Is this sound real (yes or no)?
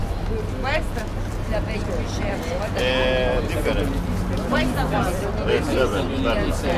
yes